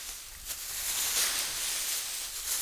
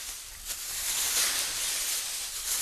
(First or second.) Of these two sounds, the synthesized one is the second